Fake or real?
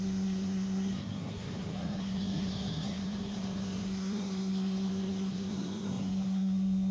fake